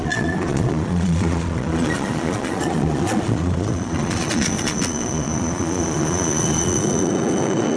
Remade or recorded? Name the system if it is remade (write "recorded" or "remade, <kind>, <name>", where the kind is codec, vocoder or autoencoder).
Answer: remade, vocoder, Vocos